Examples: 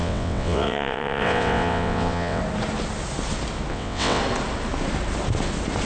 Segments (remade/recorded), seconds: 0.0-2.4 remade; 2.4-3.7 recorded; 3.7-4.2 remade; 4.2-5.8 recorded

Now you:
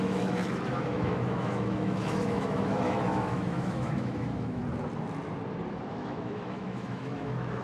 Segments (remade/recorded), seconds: 0.0-4.6 remade; 4.6-5.9 recorded; 5.9-7.6 remade

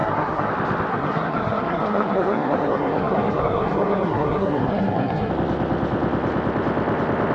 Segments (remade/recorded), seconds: 0.0-0.5 remade; 0.5-0.9 recorded; 0.9-5.3 remade; 5.3-7.3 recorded

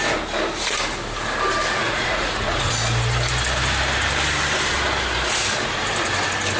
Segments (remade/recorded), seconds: 0.0-1.8 recorded; 1.8-2.7 remade; 2.7-6.6 recorded

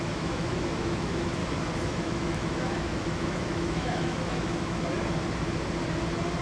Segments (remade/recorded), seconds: 0.0-1.4 remade; 1.4-1.9 recorded; 1.9-4.8 remade; 4.8-6.4 recorded

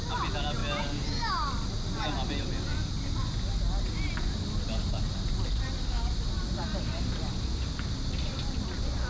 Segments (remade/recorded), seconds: 0.0-9.1 recorded

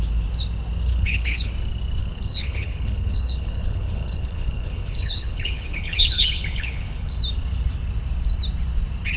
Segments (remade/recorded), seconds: 0.0-0.9 recorded; 0.9-1.5 remade; 1.5-2.0 recorded; 2.0-7.2 remade; 7.2-9.2 recorded

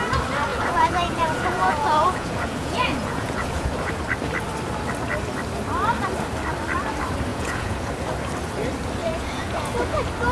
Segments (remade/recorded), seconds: 0.0-0.5 recorded; 0.5-3.9 remade; 3.9-7.3 recorded; 7.3-7.9 remade; 7.9-9.0 recorded; 9.0-9.7 remade; 9.7-10.3 recorded